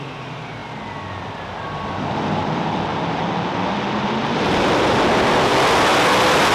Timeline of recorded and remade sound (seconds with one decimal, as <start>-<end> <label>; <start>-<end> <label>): 0.0-6.5 recorded